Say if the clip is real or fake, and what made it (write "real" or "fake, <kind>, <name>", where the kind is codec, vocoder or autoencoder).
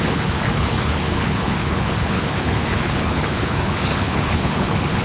fake, codec, HILCodec